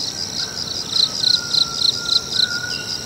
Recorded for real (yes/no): yes